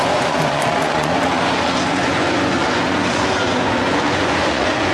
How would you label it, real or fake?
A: fake